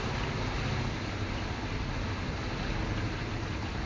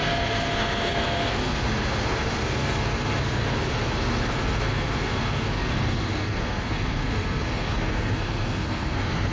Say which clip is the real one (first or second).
first